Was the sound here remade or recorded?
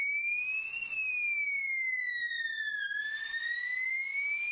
recorded